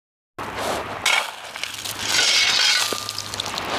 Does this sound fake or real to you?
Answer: real